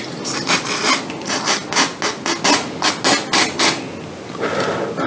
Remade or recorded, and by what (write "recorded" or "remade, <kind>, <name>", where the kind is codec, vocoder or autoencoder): recorded